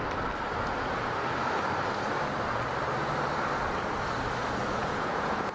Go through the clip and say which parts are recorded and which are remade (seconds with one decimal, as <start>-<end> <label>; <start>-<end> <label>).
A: 0.0-4.8 recorded; 4.8-5.5 remade